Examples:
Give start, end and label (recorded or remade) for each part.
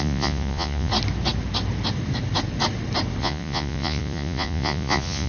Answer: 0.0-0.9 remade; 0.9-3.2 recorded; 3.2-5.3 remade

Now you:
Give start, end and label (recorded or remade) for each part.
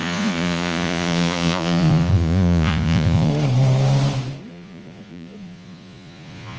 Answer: 0.0-3.3 remade; 3.3-4.5 recorded; 4.5-6.6 remade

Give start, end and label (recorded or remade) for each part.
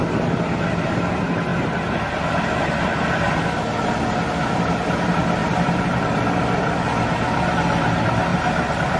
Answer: 0.0-5.4 recorded; 5.4-6.7 remade; 6.7-8.3 recorded; 8.3-9.0 remade